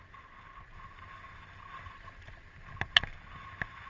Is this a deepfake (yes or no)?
no